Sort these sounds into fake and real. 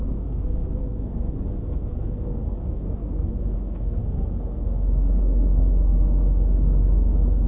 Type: fake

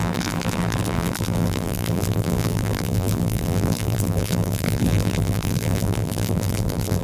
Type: fake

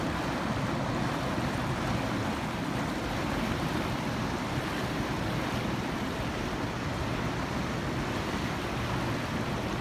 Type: real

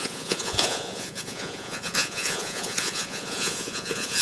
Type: fake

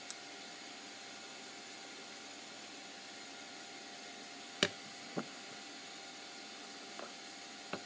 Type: real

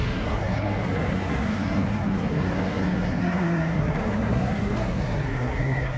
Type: fake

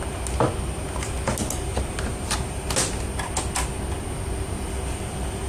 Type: real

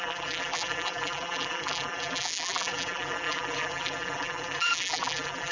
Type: fake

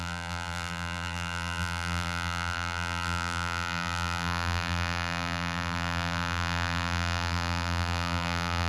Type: fake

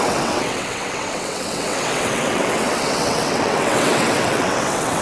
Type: fake